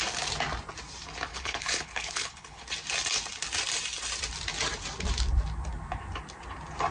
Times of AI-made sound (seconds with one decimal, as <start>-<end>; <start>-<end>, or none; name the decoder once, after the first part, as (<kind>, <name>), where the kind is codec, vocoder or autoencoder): 1.3-2.6 (codec, HILCodec)